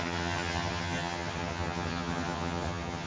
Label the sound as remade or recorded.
remade